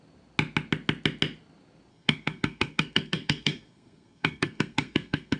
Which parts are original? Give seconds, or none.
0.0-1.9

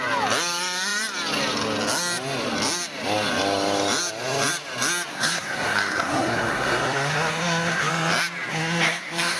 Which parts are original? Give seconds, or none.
0.0-5.1; 7.9-8.5

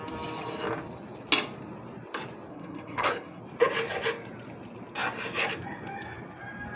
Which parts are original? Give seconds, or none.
0.0-2.5; 3.4-6.8

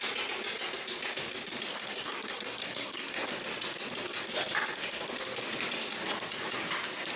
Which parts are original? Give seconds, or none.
0.0-1.7; 3.3-7.2

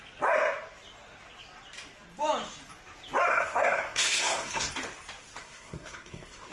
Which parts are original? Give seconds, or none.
0.0-3.3; 4.7-5.4

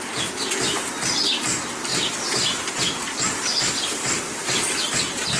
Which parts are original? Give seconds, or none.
0.0-5.4

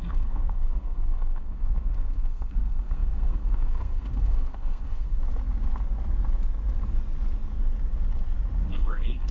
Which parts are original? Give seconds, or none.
5.2-8.7